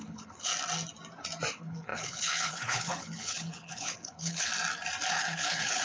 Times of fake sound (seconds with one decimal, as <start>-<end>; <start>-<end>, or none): 0.0-0.5; 1.5-4.5; 5.1-5.8